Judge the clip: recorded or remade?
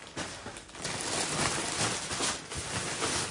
recorded